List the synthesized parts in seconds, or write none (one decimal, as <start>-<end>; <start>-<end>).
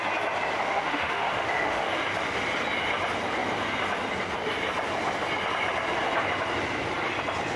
0.6-1.9